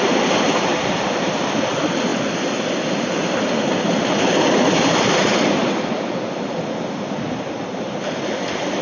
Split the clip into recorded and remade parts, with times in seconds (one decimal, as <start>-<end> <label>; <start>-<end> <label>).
0.0-8.8 recorded